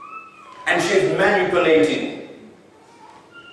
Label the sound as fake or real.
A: real